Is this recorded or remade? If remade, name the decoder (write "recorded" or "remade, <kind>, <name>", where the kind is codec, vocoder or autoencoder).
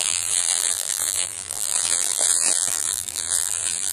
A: remade, vocoder, BigVGAN v2